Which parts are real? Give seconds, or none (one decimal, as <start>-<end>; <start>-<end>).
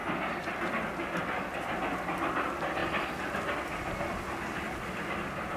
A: 0.0-5.6